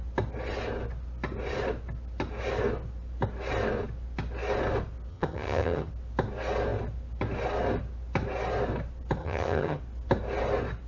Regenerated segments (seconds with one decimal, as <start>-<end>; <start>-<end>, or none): 5.1-5.9; 9.2-9.8